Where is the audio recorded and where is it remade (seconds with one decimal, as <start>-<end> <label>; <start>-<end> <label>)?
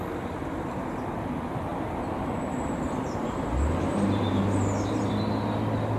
0.0-0.4 recorded; 0.4-0.9 remade; 0.9-1.7 recorded; 1.7-5.1 remade; 5.1-6.0 recorded